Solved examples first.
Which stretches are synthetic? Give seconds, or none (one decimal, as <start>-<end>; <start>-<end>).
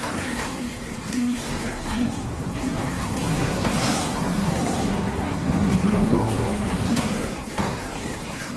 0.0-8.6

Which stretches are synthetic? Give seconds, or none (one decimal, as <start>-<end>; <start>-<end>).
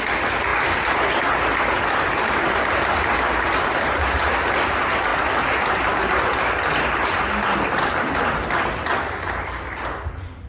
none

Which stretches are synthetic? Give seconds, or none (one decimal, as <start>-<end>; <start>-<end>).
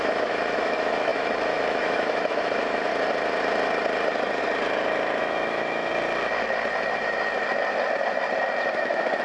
0.0-2.9; 5.2-5.9; 8.7-9.2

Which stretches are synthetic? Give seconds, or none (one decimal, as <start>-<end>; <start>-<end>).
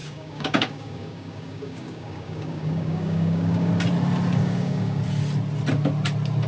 0.0-3.7; 4.4-5.0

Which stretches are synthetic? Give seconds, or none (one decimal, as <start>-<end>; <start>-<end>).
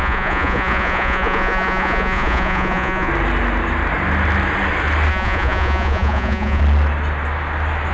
0.0-3.1; 5.1-6.6